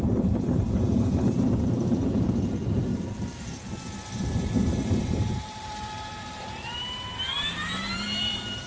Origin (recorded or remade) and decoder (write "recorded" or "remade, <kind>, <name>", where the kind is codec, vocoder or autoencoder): remade, vocoder, BigVGAN v2